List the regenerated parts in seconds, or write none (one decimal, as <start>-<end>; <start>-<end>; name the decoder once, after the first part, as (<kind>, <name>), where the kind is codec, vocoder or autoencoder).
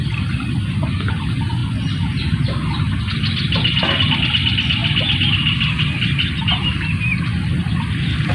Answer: none